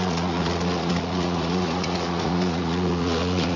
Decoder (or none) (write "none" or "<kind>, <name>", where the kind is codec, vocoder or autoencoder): vocoder, Vocos